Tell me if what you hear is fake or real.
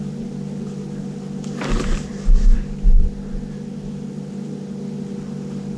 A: real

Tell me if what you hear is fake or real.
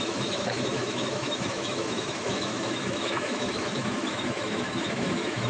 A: fake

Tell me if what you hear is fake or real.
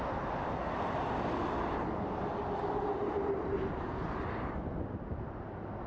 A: real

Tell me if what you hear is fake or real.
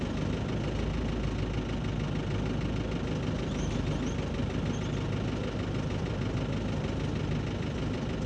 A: real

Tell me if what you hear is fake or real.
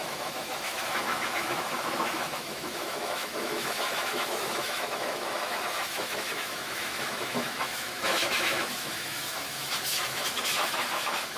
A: fake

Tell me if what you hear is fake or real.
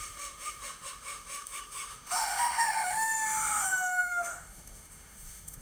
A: fake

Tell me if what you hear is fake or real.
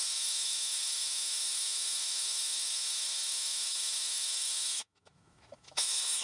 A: fake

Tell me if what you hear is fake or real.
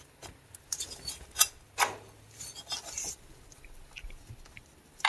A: real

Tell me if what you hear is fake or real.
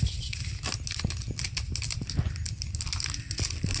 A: real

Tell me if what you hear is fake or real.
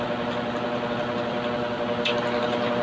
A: real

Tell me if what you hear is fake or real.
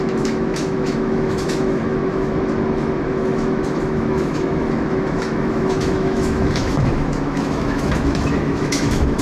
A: fake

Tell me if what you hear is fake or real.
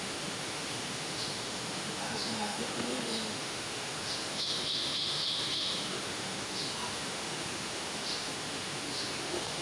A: fake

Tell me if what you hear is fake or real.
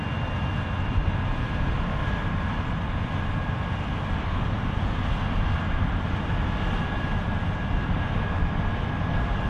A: real